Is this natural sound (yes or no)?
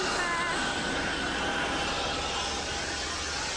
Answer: yes